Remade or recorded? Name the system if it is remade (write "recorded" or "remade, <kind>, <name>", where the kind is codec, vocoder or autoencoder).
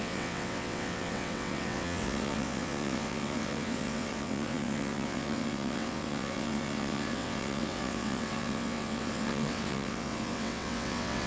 remade, vocoder, WaveNeXt